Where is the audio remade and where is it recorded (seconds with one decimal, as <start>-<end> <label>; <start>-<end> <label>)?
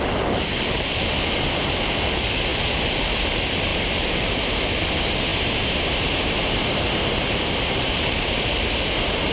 0.0-3.7 recorded; 3.7-4.4 remade; 4.4-5.3 recorded; 5.3-8.4 remade; 8.4-9.3 recorded